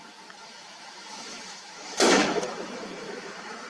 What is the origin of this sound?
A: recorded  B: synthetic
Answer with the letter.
B